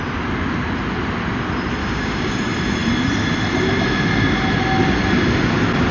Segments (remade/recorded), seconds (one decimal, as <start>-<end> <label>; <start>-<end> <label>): 0.0-1.8 recorded; 1.8-2.4 remade; 2.4-5.9 recorded